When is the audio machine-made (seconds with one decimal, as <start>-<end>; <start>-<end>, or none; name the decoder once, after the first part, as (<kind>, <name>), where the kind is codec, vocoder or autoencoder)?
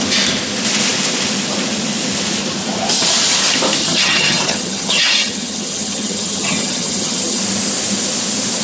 3.8-7.4 (vocoder, HiFi-GAN)